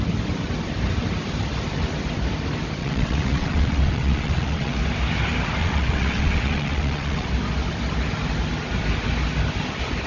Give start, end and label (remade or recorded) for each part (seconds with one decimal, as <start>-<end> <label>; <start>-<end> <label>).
0.0-2.8 recorded; 2.8-4.8 remade; 4.8-5.6 recorded; 5.6-7.3 remade; 7.3-10.1 recorded